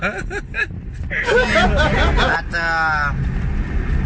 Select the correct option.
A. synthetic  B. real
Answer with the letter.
B